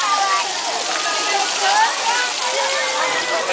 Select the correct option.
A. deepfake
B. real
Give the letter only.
B